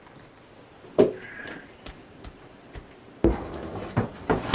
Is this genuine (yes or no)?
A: yes